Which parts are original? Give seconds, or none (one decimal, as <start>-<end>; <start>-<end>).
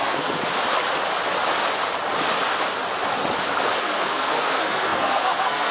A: 0.4-3.8